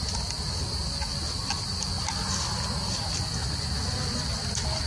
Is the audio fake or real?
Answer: real